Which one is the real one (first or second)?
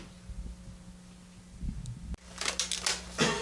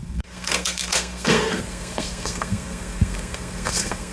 first